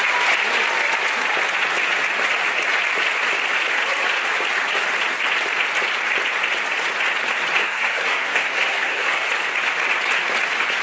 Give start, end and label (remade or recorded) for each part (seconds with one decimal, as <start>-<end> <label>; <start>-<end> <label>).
0.0-7.6 recorded; 7.6-9.3 remade; 9.3-10.8 recorded